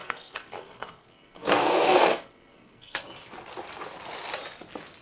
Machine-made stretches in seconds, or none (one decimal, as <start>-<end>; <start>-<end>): 0.0-3.0